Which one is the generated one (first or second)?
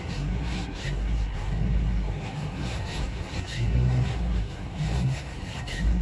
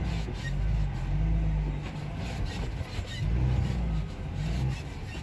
first